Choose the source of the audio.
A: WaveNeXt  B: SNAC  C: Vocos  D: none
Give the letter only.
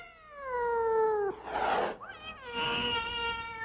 D